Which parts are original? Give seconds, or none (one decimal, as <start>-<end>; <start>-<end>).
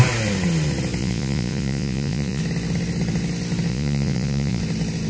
0.0-1.0; 2.4-3.7; 4.6-5.1